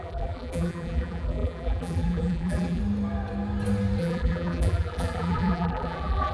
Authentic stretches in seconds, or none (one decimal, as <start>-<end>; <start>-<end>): 2.8-4.0